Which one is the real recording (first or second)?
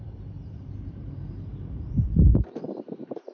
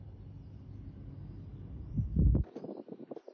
second